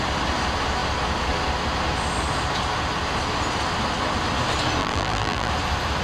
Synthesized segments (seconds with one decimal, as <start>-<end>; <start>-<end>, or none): 4.8-5.5